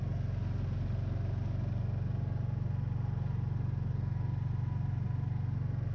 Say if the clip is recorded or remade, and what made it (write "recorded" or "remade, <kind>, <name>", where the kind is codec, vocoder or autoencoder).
recorded